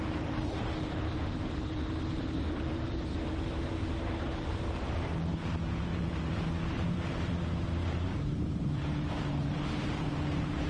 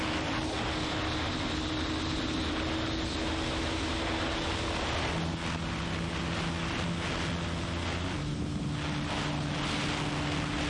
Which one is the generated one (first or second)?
first